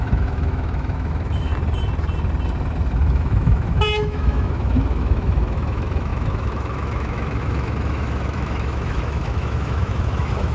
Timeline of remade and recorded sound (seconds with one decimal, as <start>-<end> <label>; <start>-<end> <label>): 0.0-1.5 remade; 1.5-3.1 recorded; 3.1-10.5 remade